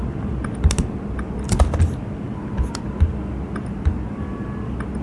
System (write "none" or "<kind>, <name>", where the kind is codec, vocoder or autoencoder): none